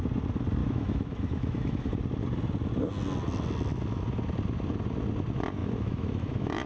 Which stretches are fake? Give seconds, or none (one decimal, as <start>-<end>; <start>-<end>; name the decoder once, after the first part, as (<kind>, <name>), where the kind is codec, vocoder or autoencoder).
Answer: 0.6-1.9 (autoencoder, DAC-VAE); 5.6-6.7